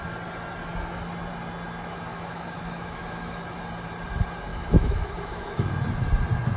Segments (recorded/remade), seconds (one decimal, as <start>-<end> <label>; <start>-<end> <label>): 0.0-2.1 recorded; 2.1-3.6 remade; 3.6-4.5 recorded; 4.5-5.7 remade; 5.7-6.6 recorded